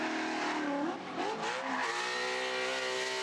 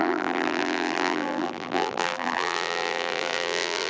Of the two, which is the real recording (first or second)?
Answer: first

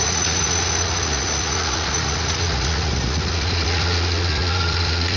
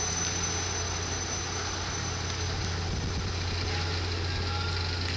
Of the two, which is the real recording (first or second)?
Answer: second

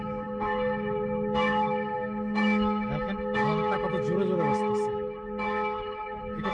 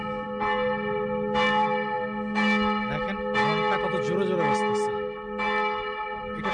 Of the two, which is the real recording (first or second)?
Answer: second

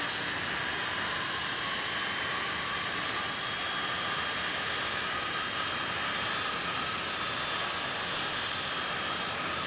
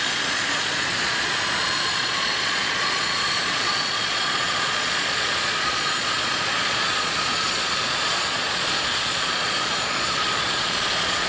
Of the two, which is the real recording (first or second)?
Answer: first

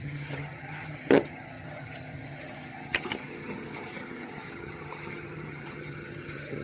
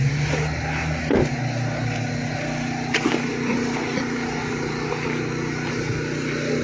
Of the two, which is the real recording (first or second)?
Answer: second